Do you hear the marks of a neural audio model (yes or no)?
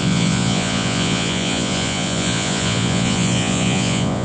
yes